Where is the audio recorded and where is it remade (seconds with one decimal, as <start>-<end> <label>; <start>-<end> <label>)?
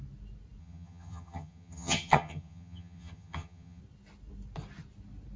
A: 0.0-0.6 recorded; 0.6-3.8 remade; 3.8-5.4 recorded